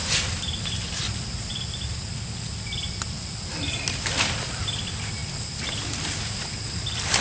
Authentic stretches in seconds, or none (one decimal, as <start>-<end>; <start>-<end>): 0.0-0.8